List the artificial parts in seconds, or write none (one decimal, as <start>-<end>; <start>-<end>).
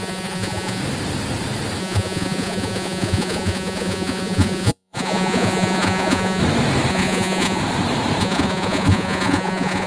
0.0-0.8; 1.8-6.4; 6.9-7.6; 8.2-9.9